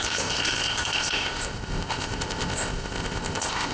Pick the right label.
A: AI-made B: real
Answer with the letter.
A